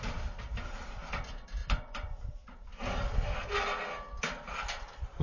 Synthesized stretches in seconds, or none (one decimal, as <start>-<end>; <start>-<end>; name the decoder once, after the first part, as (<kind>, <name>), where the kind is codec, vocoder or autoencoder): 1.6-2.2 (vocoder, Vocos)